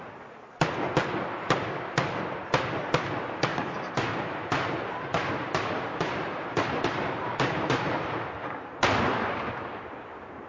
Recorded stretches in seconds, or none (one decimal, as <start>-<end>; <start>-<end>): 0.0-3.5; 8.5-10.5